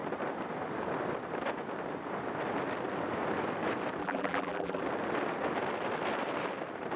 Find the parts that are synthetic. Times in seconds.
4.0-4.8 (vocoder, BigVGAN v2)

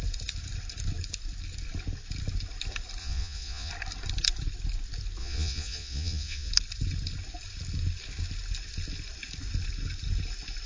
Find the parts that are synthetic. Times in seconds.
3.0-3.7 (vocoder, Vocos); 5.2-6.5

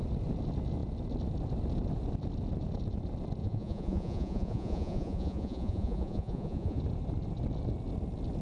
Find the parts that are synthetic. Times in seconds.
3.4-6.8 (vocoder, Vocos)

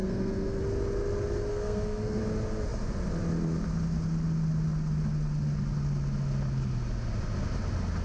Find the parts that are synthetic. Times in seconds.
0.0-0.6 (codec, SNAC); 1.5-2.2

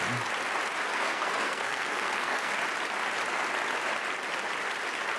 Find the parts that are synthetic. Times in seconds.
0.9-2.6 (codec, SNAC)

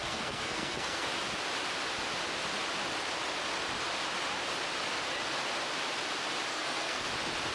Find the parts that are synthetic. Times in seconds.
0.0-1.1 (codec, SNAC); 6.5-7.1

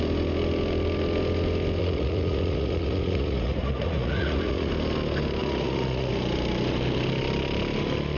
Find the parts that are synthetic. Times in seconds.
1.8-4.7 (vocoder, Vocos); 5.4-6.1